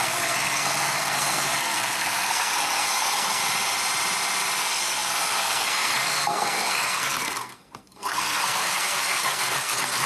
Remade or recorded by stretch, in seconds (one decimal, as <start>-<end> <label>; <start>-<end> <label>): 0.0-3.4 remade; 3.4-4.6 recorded; 4.6-10.1 remade